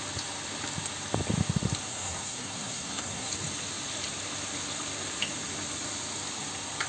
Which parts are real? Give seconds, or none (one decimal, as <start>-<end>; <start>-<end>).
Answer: 0.0-1.9; 3.3-6.9